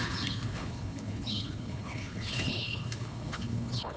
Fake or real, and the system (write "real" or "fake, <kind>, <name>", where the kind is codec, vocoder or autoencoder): fake, codec, HILCodec